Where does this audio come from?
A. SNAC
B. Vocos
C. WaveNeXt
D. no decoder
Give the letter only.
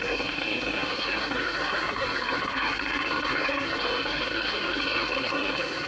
A